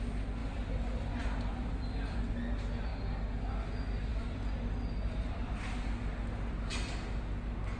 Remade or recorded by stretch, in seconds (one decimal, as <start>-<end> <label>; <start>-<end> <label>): 0.0-0.4 recorded; 0.4-2.3 remade; 2.3-4.1 recorded; 4.1-6.0 remade; 6.0-7.8 recorded